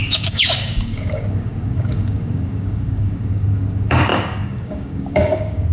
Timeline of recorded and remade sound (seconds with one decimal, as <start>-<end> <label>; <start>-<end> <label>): 0.0-5.7 remade